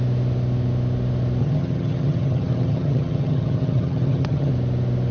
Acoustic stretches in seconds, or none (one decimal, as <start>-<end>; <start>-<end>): 0.0-1.4; 4.5-5.1